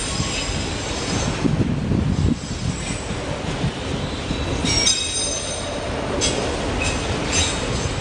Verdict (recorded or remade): recorded